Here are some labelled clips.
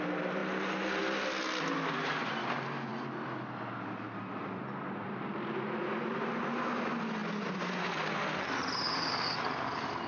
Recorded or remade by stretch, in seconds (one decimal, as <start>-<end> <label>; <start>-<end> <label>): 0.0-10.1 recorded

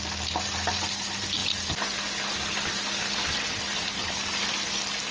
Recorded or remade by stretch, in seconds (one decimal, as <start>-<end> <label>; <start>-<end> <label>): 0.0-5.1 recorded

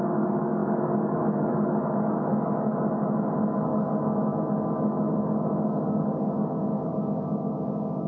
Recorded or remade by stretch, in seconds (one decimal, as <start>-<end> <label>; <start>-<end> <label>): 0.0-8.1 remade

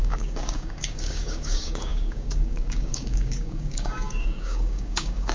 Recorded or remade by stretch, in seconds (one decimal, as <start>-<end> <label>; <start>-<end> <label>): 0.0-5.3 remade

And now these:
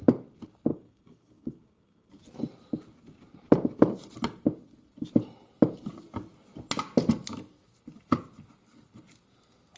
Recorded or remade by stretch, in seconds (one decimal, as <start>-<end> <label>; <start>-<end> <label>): 0.0-0.7 recorded; 0.7-2.1 remade; 2.1-9.8 recorded

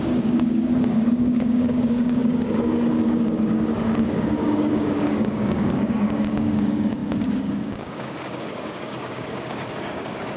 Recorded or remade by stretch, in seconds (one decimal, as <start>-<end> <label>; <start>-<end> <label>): 0.0-10.4 remade

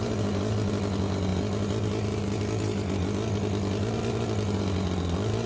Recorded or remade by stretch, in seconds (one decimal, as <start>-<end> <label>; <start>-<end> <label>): 0.0-5.5 recorded